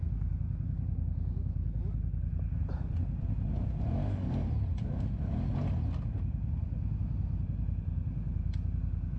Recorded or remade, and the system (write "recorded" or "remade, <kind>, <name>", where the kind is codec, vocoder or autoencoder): recorded